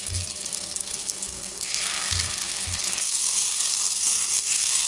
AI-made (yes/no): yes